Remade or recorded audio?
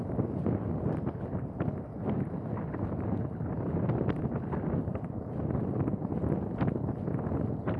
recorded